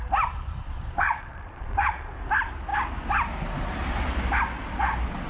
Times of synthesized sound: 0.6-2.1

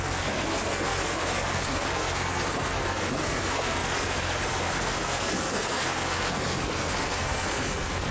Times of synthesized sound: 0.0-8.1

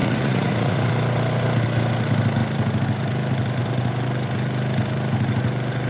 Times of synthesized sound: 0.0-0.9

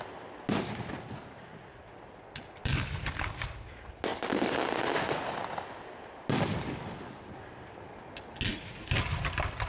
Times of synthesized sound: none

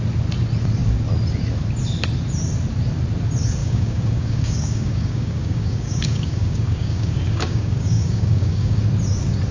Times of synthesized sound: 3.6-8.8

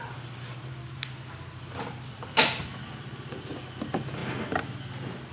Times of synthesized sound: none

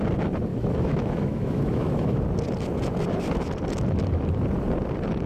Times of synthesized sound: 0.5-2.2